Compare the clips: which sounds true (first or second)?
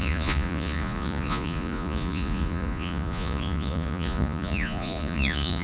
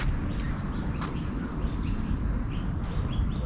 second